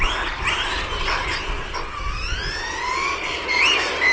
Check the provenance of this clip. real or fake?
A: real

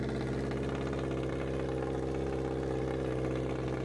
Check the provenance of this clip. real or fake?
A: real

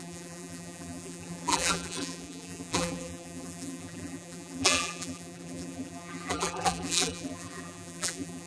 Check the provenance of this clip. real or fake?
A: fake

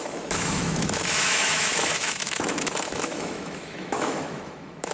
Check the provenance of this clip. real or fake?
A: fake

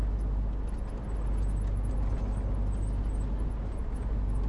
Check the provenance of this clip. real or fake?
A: real